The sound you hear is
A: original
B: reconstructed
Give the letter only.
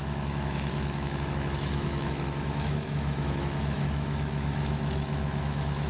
B